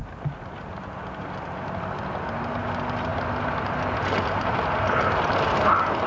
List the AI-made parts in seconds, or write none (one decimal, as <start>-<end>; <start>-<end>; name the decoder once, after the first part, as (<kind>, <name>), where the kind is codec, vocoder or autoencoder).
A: none